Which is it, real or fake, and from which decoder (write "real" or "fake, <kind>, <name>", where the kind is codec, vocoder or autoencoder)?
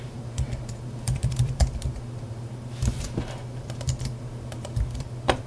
fake, vocoder, BigVGAN v2